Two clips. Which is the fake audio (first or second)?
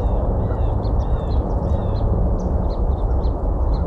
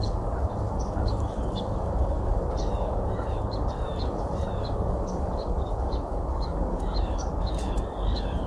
second